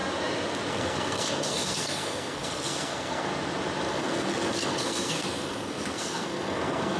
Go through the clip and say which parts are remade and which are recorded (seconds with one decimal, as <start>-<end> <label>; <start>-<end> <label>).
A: 0.0-0.7 recorded; 0.7-3.3 remade; 3.3-3.9 recorded; 3.9-7.0 remade